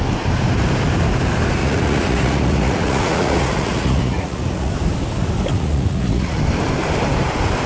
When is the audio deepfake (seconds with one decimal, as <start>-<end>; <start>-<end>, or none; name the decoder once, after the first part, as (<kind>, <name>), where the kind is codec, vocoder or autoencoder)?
1.6-4.7 (vocoder, Vocos); 5.5-6.4

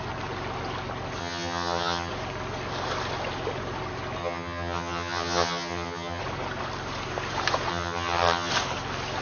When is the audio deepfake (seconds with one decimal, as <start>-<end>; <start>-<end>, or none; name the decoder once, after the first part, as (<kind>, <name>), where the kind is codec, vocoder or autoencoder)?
1.2-2.1 (vocoder, HiFi-GAN); 4.2-6.2; 7.7-8.5

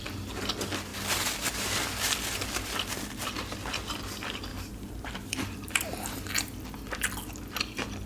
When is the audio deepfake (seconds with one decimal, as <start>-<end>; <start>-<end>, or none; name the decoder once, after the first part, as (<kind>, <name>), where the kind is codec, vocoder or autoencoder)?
4.5-6.2 (vocoder, BigVGAN v2)

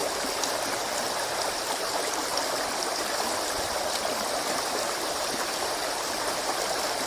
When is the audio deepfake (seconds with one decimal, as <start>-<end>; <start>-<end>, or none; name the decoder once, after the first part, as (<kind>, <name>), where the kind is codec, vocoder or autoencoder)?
1.5-2.3 (vocoder, BigVGAN v2); 4.7-7.1

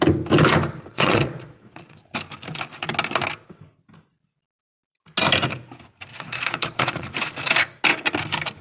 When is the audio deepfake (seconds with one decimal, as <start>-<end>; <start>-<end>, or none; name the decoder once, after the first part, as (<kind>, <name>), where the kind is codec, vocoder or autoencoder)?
0.9-2.0 (vocoder, Vocos); 6.1-7.1

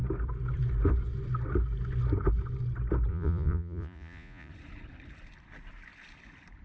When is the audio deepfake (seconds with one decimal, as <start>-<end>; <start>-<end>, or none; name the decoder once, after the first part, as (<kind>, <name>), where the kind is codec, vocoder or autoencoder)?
3.1-4.5 (vocoder, Vocos)

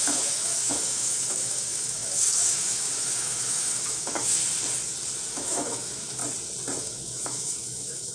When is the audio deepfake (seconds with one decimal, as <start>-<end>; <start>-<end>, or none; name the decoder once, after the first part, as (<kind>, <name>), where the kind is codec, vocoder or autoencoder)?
0.0-4.4 (autoencoder, DAC-VAE); 5.3-6.2; 6.8-8.1

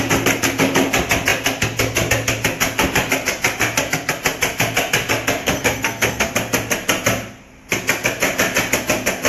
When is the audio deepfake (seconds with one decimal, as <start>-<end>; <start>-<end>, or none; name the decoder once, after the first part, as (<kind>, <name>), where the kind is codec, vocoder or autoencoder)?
5.4-6.3 (codec, SNAC)